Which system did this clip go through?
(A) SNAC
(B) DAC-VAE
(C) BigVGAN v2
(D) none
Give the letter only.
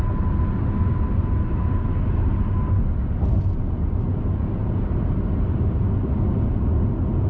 D